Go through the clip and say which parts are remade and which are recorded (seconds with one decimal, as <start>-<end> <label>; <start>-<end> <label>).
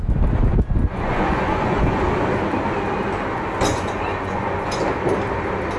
0.0-0.8 recorded; 0.8-2.0 remade; 2.0-3.7 recorded; 3.7-4.8 remade; 4.8-5.8 recorded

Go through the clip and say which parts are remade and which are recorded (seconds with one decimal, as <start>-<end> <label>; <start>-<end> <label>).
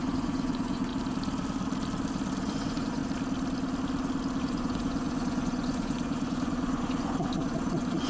0.0-0.9 remade; 0.9-2.5 recorded; 2.5-3.0 remade; 3.0-4.4 recorded; 4.4-8.1 remade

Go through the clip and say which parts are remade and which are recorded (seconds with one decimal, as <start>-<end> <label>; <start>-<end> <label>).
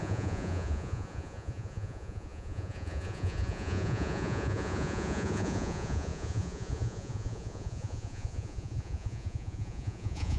0.0-10.4 remade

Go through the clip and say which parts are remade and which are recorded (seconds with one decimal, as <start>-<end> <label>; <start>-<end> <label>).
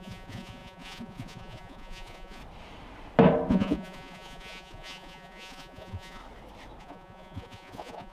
0.0-2.4 remade; 2.4-3.5 recorded; 3.5-6.2 remade; 6.2-6.8 recorded; 6.8-8.1 remade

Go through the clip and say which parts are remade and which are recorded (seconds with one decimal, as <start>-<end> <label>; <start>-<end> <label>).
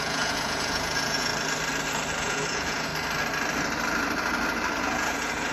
0.0-1.3 remade; 1.3-2.2 recorded; 2.2-2.9 remade; 2.9-4.8 recorded; 4.8-5.5 remade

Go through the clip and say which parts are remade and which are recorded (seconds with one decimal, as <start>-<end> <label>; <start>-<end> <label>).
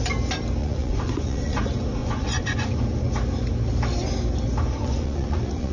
0.0-0.6 recorded; 0.6-1.6 remade; 1.6-2.0 recorded; 2.0-2.8 remade; 2.8-4.8 recorded; 4.8-5.7 remade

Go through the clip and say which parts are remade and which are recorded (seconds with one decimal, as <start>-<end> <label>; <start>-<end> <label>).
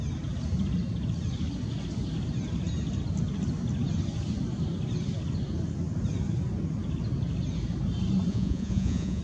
0.0-8.3 recorded; 8.3-9.2 remade